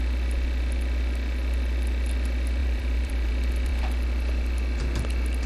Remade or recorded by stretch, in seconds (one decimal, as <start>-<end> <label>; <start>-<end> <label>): 0.0-2.6 recorded; 2.6-3.3 remade; 3.3-5.5 recorded